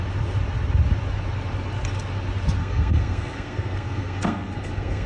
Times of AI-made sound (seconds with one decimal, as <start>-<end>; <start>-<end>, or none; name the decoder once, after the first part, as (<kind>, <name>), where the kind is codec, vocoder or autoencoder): 2.6-5.1 (codec, SNAC)